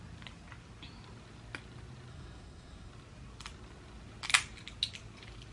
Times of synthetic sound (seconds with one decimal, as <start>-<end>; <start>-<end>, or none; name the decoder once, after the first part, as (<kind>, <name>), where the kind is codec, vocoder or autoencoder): 2.1-2.9 (codec, SNAC)